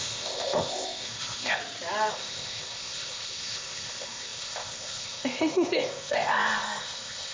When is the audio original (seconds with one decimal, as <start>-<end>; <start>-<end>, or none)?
1.6-2.1